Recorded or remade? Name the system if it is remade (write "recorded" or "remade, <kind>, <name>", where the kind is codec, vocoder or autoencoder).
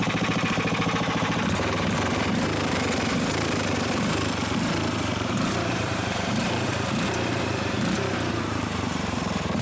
remade, vocoder, BigVGAN v2